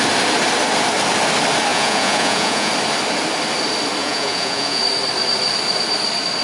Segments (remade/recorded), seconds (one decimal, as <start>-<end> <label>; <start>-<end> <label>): 0.0-1.7 recorded; 1.7-2.7 remade; 2.7-4.0 recorded; 4.0-4.8 remade; 4.8-6.4 recorded